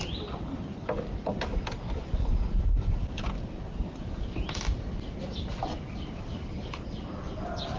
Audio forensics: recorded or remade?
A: recorded